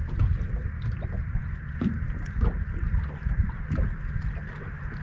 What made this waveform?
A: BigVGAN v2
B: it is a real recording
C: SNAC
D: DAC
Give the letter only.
A